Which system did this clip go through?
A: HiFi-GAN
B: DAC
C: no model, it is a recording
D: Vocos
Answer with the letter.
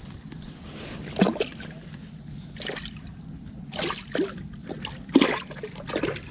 C